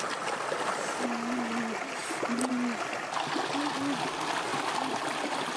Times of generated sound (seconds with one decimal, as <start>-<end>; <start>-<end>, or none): none